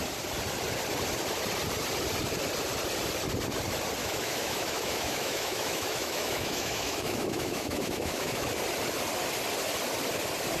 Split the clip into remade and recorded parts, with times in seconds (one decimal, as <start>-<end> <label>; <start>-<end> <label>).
0.0-4.0 recorded; 4.0-8.5 remade; 8.5-10.6 recorded